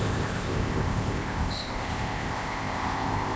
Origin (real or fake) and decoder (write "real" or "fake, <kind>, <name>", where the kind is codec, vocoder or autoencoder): fake, codec, ZipCodec